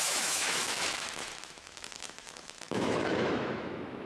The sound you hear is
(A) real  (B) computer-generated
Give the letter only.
B